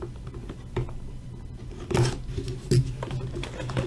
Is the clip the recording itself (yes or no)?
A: yes